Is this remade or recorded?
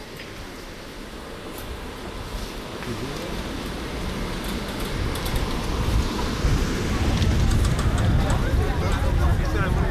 recorded